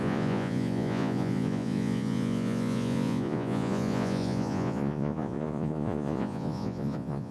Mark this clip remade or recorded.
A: remade